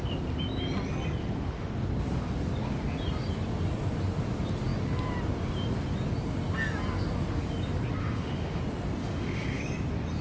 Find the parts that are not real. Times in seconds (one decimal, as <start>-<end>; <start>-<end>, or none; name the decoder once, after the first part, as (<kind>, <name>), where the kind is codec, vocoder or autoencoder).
1.2-1.7 (autoencoder, DAC-VAE); 8.0-8.6; 9.0-9.6